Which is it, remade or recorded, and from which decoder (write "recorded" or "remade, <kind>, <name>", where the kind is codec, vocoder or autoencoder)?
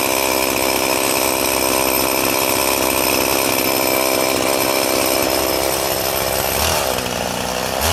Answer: recorded